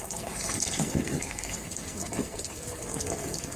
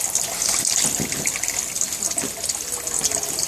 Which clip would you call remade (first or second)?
first